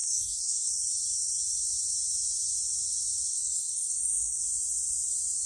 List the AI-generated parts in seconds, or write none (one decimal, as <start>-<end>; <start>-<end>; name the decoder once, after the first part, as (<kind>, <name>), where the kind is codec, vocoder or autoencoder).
0.0-0.7 (codec, DAC); 3.3-4.4